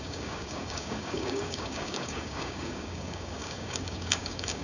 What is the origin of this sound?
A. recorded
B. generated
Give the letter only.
B